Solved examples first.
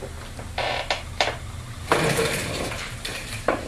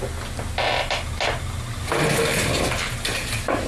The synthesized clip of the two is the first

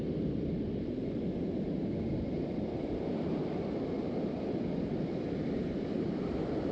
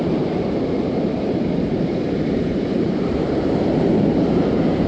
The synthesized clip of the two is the second